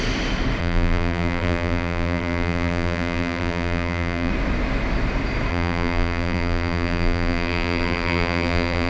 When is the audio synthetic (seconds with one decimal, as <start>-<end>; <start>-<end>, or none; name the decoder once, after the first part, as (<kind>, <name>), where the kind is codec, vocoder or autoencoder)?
0.6-4.3 (vocoder, BigVGAN v2); 5.5-8.9